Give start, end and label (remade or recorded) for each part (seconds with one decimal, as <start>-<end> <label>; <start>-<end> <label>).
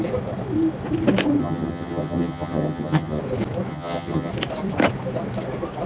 0.0-1.4 recorded; 1.4-3.2 remade; 3.2-3.7 recorded; 3.7-4.3 remade; 4.3-5.9 recorded